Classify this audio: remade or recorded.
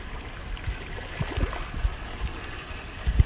recorded